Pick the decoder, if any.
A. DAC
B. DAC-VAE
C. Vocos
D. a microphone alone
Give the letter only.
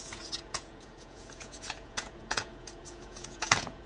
C